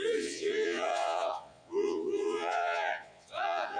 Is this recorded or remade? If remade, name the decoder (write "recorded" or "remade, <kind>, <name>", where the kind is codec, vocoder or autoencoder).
remade, vocoder, Vocos